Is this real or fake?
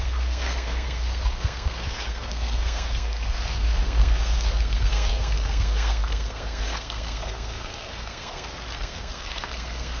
fake